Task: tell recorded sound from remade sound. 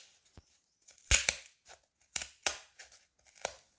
recorded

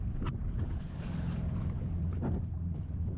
remade